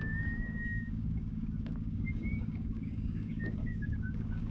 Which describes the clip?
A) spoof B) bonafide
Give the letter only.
A